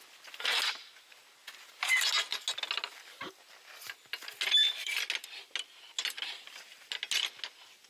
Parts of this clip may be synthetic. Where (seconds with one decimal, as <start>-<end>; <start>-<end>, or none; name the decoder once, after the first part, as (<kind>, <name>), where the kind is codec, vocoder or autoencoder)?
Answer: none